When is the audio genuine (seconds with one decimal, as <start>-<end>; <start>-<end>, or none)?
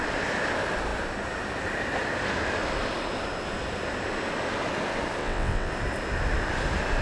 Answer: 0.0-5.2; 5.7-7.0